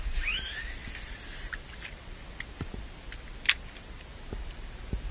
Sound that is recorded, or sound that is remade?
recorded